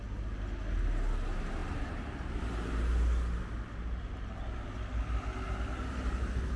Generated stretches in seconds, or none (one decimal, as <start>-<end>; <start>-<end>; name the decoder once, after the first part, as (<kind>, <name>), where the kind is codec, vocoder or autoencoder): none